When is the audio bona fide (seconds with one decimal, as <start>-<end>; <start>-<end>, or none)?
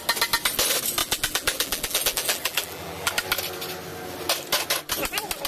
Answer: 0.0-1.0; 3.1-5.5